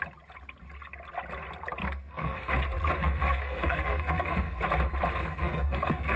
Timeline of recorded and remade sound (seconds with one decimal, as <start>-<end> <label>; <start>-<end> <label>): 0.0-1.8 recorded; 1.8-2.5 remade; 2.5-3.0 recorded; 3.0-4.6 remade; 4.6-5.2 recorded; 5.2-6.2 remade